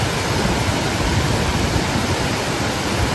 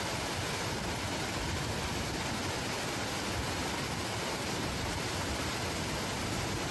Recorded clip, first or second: second